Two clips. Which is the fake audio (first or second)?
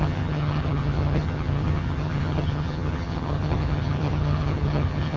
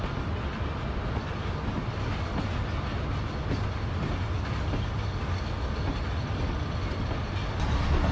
first